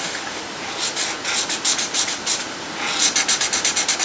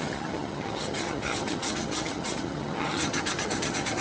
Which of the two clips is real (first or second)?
first